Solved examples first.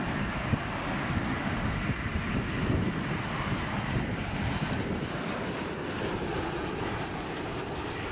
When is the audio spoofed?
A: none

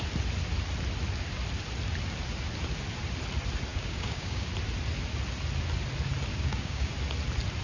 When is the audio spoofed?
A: 3.7-4.5; 6.3-6.9

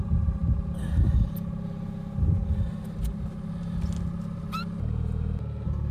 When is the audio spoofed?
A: none

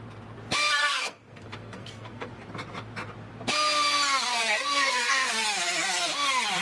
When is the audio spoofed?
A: 0.8-2.3; 4.3-5.3